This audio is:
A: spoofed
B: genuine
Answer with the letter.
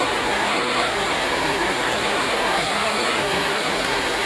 A